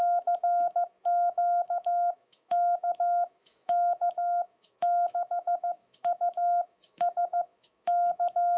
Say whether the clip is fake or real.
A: fake